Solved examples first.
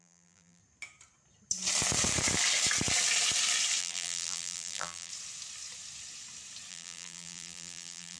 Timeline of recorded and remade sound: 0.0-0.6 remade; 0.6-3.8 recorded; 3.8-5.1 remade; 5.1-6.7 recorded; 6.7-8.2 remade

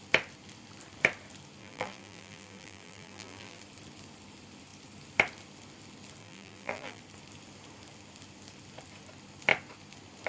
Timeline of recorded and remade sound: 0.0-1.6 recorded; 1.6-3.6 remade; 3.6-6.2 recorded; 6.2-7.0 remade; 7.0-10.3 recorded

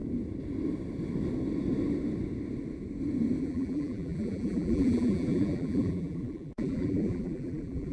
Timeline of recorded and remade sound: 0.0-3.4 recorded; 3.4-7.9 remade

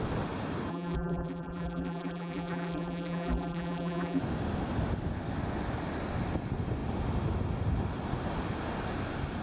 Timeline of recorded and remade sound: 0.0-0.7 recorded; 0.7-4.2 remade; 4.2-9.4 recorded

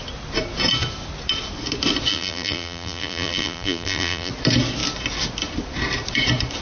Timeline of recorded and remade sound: 0.0-2.1 recorded; 2.1-4.3 remade; 4.3-6.6 recorded